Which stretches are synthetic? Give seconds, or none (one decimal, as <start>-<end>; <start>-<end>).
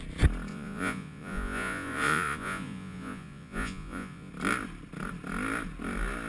0.5-4.3